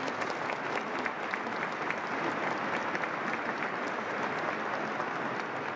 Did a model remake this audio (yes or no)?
no